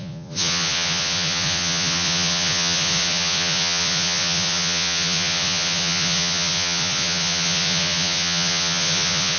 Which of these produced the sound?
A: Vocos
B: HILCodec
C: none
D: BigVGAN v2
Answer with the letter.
A